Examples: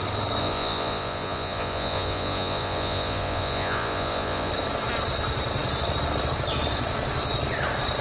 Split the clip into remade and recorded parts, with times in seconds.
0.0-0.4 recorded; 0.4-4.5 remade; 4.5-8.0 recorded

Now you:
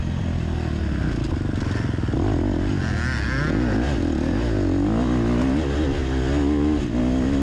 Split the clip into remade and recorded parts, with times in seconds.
0.0-7.4 recorded

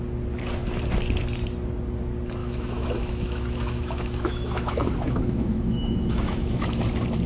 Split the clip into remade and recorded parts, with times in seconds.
0.0-2.4 recorded; 2.4-6.8 remade; 6.8-7.3 recorded